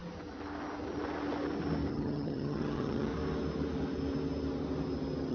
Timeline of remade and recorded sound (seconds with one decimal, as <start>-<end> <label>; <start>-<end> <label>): 0.0-1.9 recorded; 1.9-3.1 remade; 3.1-5.3 recorded